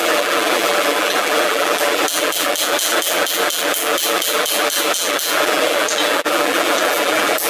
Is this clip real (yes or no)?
no